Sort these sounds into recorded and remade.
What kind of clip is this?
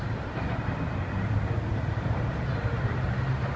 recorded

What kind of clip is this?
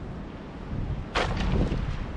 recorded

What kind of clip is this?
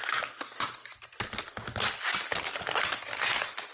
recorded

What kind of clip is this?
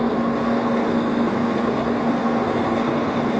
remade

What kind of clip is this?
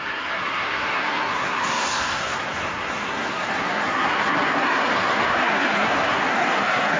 remade